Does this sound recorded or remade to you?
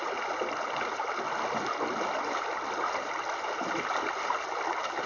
recorded